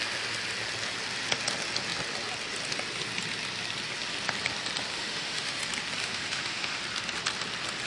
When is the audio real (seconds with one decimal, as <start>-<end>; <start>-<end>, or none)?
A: 0.0-4.9; 5.6-6.0; 6.8-7.9